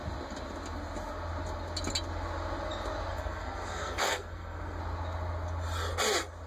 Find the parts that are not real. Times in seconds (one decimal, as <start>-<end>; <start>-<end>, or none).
3.1-4.8